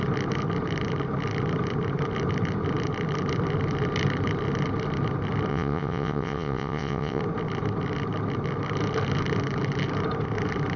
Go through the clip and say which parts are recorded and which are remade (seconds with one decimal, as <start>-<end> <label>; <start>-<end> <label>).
0.0-5.5 recorded; 5.5-7.2 remade; 7.2-10.8 recorded

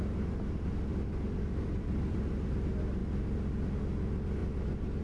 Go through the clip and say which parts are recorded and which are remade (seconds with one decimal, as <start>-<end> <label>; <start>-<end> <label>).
0.0-0.9 recorded; 0.9-2.3 remade; 2.3-5.0 recorded

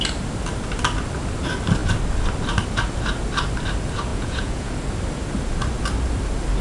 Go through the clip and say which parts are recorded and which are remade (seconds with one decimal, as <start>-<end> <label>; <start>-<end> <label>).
0.0-4.1 recorded; 4.1-4.7 remade; 4.7-6.6 recorded

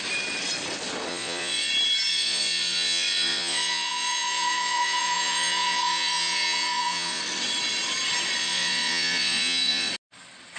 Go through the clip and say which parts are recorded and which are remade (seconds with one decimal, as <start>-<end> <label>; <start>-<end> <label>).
0.0-1.1 recorded; 1.1-1.7 remade; 1.7-2.1 recorded; 2.1-7.2 remade; 7.2-8.4 recorded; 8.4-9.9 remade; 9.9-10.6 recorded

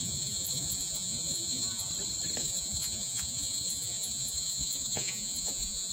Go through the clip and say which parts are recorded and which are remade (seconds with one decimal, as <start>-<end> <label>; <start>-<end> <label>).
0.0-1.9 remade; 1.9-2.4 recorded; 2.4-5.9 remade

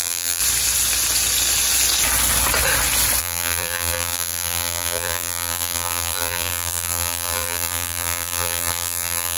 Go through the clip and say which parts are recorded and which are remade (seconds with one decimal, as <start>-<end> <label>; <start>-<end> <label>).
0.0-0.4 remade; 0.4-3.2 recorded; 3.2-9.4 remade